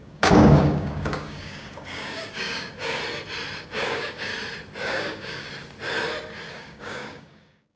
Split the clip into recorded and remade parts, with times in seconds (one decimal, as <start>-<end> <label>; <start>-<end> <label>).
0.0-3.0 remade; 3.0-3.6 recorded; 3.6-4.3 remade; 4.3-4.8 recorded; 4.8-5.5 remade; 5.5-6.5 recorded; 6.5-7.8 remade